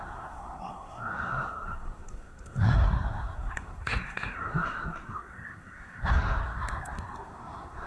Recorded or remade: remade